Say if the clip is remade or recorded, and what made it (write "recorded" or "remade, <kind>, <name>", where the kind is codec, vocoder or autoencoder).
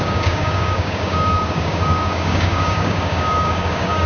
remade, codec, DAC